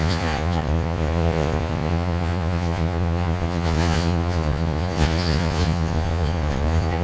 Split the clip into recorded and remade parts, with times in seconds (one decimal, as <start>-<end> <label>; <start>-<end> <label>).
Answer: 0.0-7.0 remade